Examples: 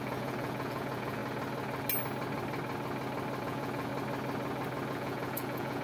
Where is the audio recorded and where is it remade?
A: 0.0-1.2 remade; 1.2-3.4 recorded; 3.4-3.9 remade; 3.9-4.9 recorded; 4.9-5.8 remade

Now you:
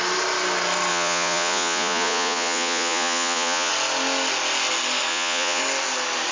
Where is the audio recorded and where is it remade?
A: 0.0-0.9 recorded; 0.9-3.7 remade; 3.7-5.1 recorded; 5.1-5.6 remade; 5.6-6.3 recorded

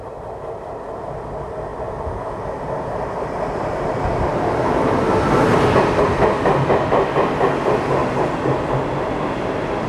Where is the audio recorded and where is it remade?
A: 0.0-9.9 recorded

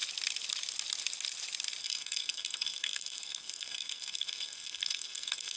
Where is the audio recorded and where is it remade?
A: 0.0-1.8 recorded; 1.8-5.6 remade

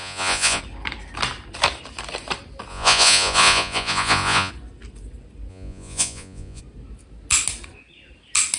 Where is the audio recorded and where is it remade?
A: 0.0-0.6 remade; 0.6-2.7 recorded; 2.7-4.5 remade; 4.5-5.5 recorded; 5.5-6.6 remade; 6.6-8.6 recorded

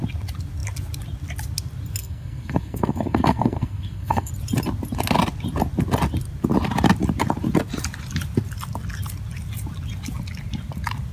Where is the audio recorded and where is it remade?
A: 0.0-2.0 recorded; 2.0-4.3 remade; 4.3-11.1 recorded

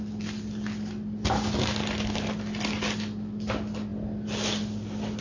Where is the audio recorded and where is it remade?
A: 0.0-5.2 recorded